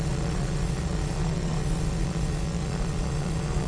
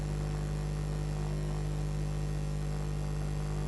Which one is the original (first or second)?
second